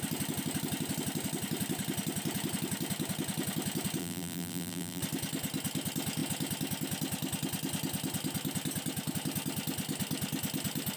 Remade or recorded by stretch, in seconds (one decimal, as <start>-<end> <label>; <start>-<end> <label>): 0.0-4.0 recorded; 4.0-5.0 remade; 5.0-11.0 recorded